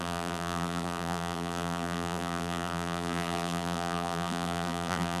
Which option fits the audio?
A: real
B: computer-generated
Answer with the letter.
B